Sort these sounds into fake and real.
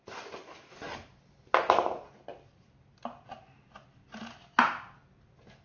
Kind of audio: real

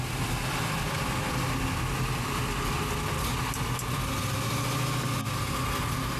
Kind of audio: real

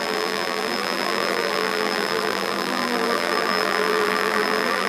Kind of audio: fake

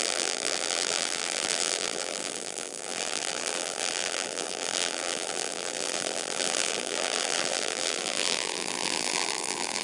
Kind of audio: fake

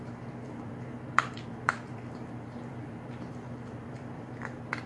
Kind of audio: fake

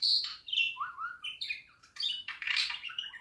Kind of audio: fake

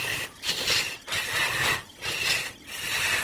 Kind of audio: real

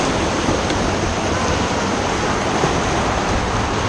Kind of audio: fake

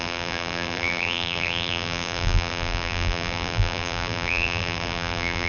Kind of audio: fake